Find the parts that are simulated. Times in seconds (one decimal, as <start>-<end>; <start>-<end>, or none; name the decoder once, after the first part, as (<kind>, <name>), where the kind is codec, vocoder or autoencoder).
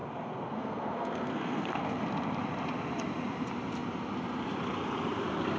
0.0-2.0 (codec, SNAC)